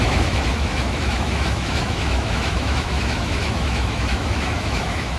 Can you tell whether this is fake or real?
fake